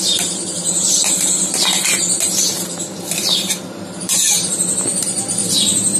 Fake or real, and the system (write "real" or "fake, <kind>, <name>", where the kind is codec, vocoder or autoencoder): fake, vocoder, BigVGAN v2